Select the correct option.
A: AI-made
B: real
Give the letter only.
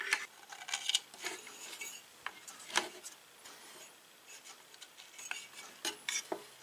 B